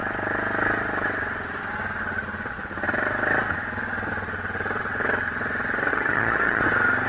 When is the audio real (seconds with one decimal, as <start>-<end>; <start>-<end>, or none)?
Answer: 0.0-5.9; 6.6-7.1